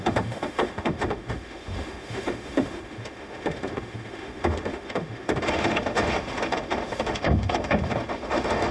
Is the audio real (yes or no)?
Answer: no